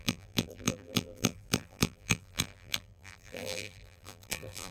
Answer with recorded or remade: remade